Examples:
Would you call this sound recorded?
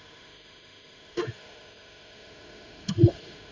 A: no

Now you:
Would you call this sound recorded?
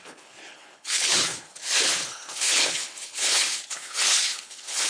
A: no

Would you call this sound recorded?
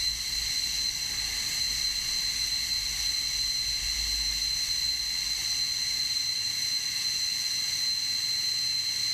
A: yes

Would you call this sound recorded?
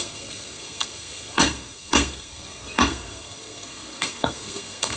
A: no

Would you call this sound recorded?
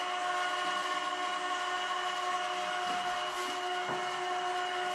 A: yes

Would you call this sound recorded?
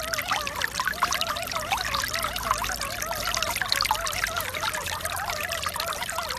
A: yes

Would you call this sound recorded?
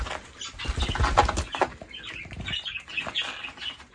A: yes